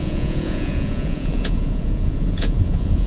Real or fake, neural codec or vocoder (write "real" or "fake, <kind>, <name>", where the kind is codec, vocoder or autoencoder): fake, vocoder, Vocos